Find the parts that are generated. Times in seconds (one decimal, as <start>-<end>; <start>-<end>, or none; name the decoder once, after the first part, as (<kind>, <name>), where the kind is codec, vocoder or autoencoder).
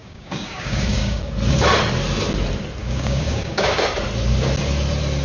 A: 0.0-1.2 (codec, DAC); 2.8-3.8